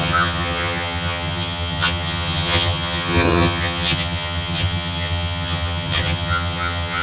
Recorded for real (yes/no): no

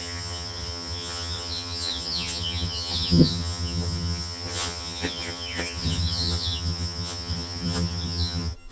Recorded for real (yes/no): no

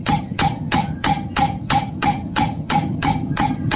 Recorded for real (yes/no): no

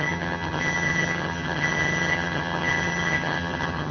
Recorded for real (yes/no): no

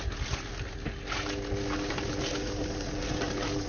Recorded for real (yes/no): yes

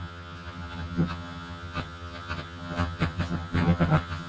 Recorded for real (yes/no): no